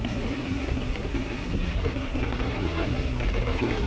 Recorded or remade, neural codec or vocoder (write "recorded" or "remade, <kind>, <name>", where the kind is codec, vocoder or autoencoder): remade, codec, SNAC